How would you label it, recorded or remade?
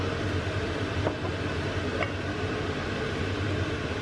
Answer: recorded